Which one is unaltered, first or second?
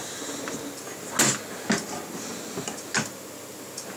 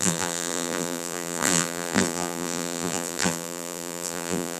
first